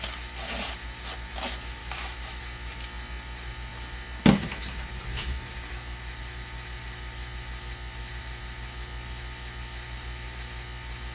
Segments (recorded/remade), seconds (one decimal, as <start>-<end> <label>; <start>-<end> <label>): 0.0-1.8 recorded; 1.8-2.4 remade; 2.4-11.1 recorded